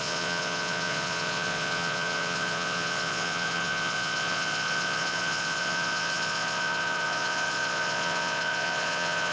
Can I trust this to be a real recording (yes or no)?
no